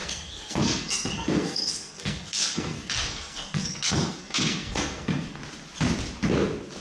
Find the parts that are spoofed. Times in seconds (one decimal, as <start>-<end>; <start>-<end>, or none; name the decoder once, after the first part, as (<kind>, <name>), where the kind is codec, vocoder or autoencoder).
0.0-5.4 (codec, SNAC)

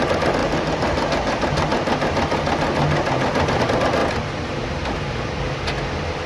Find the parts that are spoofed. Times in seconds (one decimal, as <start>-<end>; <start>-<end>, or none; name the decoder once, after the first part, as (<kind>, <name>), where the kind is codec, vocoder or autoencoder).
none

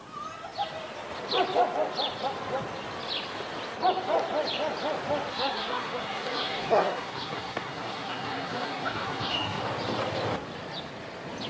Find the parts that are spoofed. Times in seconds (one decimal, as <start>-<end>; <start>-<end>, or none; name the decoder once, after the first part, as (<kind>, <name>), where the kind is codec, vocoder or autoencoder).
5.3-9.6 (codec, SNAC)

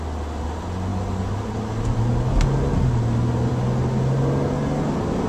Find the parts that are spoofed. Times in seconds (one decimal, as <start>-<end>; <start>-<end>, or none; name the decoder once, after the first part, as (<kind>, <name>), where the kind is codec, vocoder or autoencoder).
none